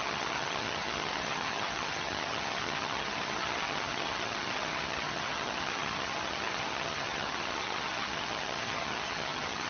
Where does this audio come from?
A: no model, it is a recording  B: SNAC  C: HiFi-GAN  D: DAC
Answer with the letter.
C